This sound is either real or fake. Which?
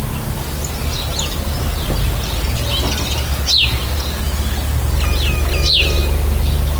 real